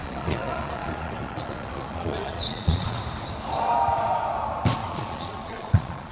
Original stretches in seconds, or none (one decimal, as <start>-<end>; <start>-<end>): 3.0-4.8